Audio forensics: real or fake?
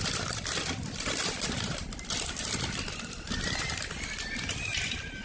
real